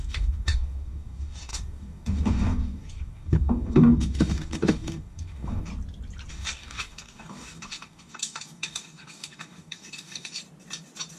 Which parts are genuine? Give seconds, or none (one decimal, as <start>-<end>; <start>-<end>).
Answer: 5.7-6.3; 10.4-11.2